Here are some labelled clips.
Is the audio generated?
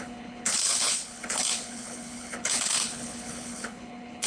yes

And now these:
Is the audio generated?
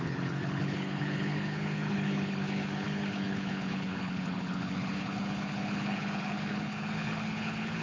yes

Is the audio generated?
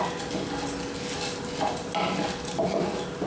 no